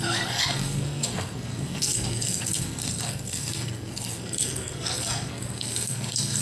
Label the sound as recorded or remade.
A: remade